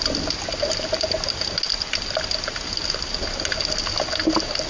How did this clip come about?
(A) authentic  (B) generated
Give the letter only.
A